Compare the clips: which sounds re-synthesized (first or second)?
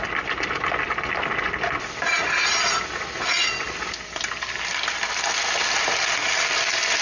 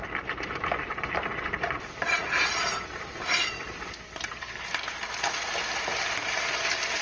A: second